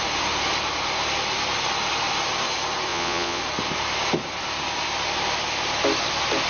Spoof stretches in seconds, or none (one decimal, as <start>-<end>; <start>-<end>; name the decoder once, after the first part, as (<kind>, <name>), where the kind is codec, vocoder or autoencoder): 2.9-3.4 (vocoder, Vocos)